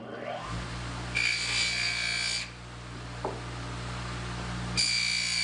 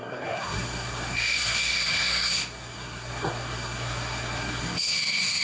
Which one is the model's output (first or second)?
second